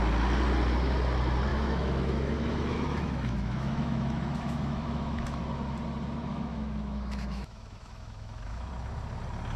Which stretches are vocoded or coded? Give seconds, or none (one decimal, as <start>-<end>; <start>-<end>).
1.5-5.4; 6.3-8.7